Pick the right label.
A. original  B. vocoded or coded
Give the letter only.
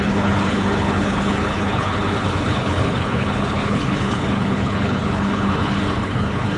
B